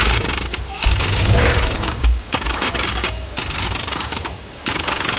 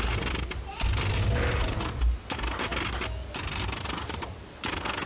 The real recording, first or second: second